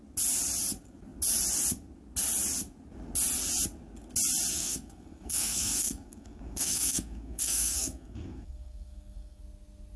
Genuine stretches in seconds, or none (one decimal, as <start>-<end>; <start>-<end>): 0.0-4.5; 9.4-10.0